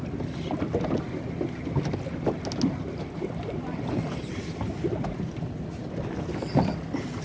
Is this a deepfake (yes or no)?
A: no